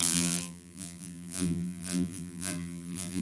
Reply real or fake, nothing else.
fake